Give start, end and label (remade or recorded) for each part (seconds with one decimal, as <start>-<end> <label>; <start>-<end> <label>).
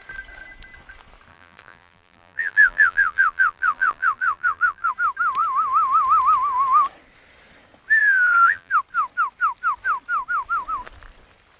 0.0-1.3 recorded; 1.3-4.9 remade; 4.9-8.0 recorded; 8.0-8.7 remade; 8.7-11.6 recorded